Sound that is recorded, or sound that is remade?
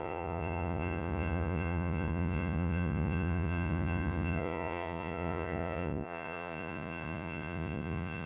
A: remade